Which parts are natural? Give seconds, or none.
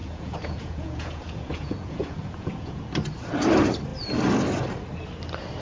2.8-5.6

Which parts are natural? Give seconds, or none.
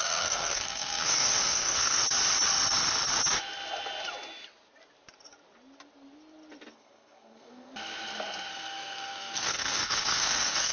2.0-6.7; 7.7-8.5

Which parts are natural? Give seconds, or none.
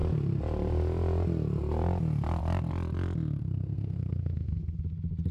0.0-3.4; 4.6-5.3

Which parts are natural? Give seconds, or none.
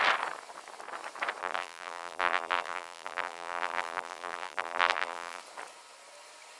0.0-1.4; 5.4-6.6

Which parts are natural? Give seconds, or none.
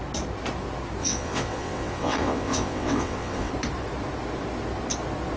0.0-1.0; 3.5-5.4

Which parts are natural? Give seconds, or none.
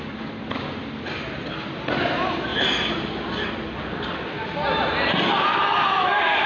0.0-6.5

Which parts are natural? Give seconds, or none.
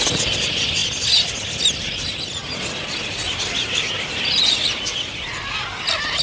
0.0-6.2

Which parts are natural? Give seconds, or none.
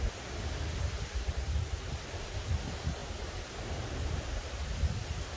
0.0-3.0; 3.8-5.4